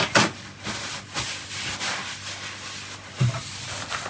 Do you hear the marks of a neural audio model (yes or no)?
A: no